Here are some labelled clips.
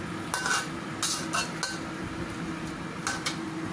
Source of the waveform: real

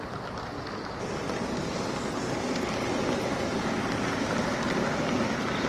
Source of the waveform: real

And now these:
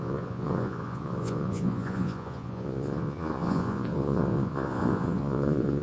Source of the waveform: fake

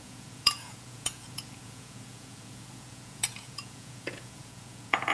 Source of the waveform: fake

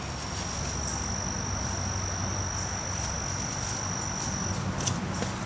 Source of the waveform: real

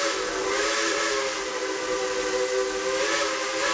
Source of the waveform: real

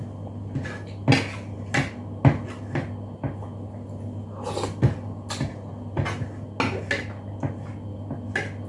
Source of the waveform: real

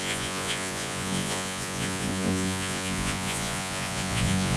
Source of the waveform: fake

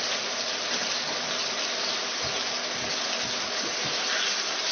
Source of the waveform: real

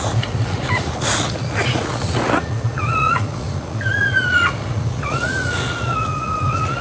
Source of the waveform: fake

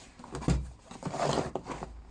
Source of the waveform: real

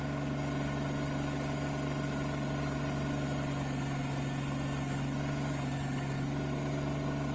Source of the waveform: real